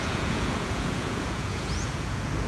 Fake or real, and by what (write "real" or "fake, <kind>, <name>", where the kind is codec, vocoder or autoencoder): fake, vocoder, Vocos